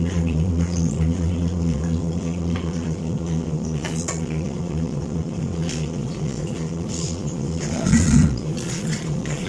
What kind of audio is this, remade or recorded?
remade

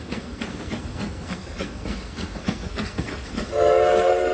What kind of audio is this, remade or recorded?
remade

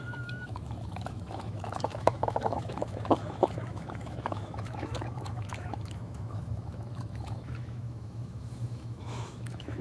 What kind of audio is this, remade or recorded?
remade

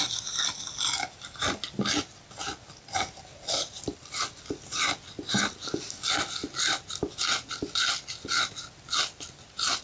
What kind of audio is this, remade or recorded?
recorded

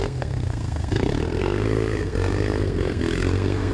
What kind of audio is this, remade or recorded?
remade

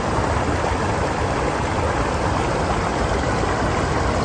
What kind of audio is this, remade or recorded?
remade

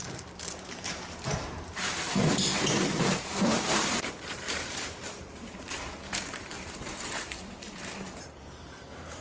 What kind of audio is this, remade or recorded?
remade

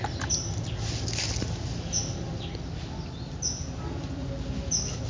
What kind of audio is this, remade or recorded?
recorded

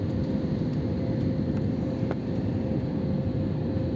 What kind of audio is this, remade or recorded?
recorded